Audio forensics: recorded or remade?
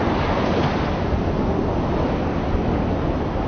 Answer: recorded